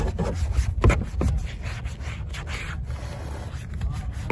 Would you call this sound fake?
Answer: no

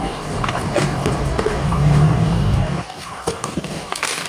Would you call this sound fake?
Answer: yes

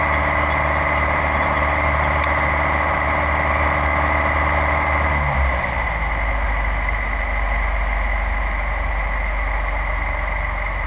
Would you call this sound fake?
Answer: no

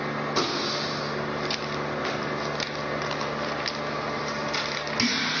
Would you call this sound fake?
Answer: no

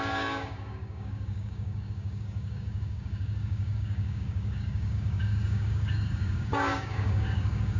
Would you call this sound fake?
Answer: yes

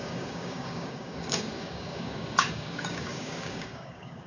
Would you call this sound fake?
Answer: yes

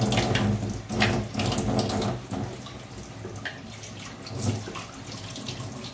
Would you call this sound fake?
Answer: no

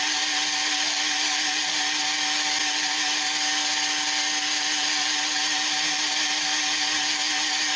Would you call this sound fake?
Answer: no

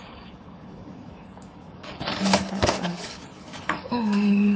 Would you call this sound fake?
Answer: yes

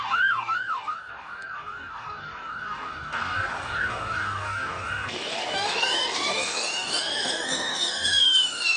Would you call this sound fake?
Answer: yes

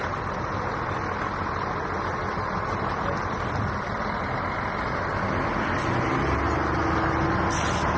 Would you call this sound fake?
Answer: no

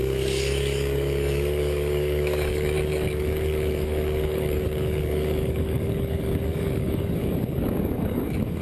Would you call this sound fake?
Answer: yes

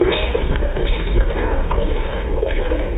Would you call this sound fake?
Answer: yes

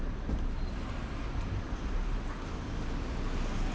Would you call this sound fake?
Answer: no